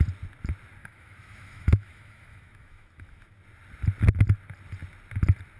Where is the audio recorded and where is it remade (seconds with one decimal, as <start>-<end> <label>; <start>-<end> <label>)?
0.0-0.8 recorded; 0.8-3.4 remade; 3.4-5.6 recorded